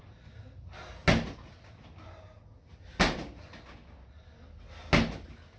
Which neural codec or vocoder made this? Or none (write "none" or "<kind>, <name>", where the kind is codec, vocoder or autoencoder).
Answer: none